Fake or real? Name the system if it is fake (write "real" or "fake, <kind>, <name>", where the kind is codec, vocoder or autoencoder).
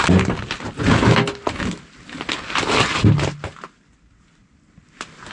real